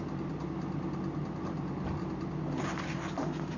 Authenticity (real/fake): real